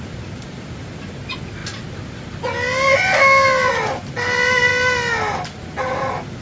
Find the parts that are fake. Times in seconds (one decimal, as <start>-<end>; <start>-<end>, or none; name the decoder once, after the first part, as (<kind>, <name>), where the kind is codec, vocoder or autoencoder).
none